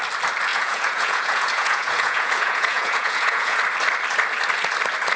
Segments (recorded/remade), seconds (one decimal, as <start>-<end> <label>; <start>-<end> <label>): 0.0-0.5 recorded; 0.5-3.6 remade; 3.6-5.2 recorded